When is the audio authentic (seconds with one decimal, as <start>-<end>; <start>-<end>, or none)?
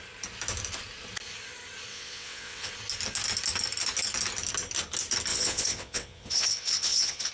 0.0-1.9; 2.7-5.3